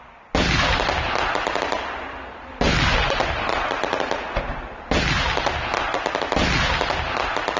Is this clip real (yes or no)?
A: yes